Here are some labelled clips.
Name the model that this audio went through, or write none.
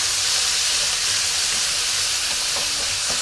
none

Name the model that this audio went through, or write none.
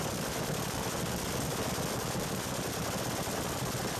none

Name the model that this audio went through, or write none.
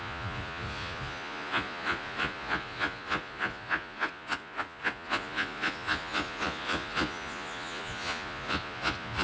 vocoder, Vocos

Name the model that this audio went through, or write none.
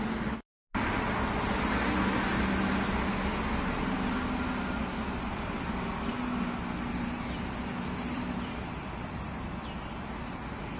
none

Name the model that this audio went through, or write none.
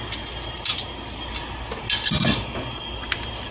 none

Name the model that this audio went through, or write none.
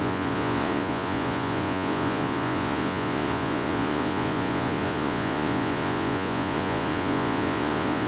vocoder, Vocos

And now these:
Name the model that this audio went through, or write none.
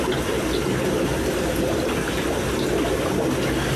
none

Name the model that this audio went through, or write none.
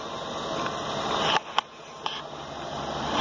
none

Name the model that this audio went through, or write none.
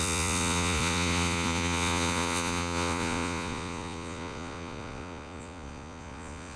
vocoder, Vocos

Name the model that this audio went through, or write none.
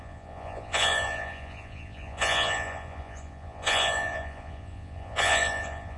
vocoder, Vocos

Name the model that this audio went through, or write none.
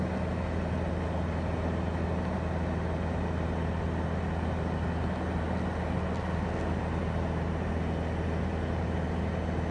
none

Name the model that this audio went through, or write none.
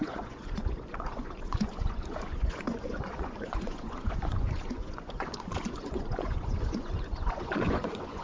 vocoder, Vocos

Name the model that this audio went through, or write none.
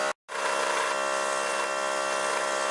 none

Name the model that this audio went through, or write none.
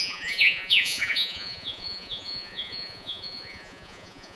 vocoder, Vocos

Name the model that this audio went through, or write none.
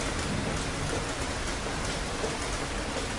none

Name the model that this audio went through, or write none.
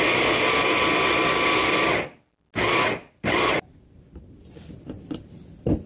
none